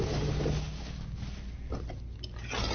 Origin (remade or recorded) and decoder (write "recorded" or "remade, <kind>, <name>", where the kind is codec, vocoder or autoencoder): recorded